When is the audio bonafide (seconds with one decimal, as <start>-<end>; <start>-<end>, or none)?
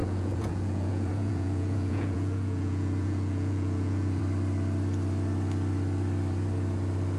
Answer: 4.2-7.2